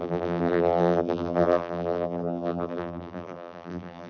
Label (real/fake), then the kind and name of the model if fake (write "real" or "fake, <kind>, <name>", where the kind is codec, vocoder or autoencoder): fake, vocoder, BigVGAN v2